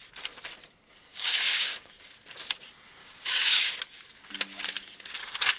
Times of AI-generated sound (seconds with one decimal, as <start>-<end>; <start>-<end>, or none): 1.1-1.9; 3.0-3.7